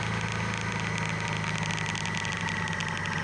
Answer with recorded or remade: recorded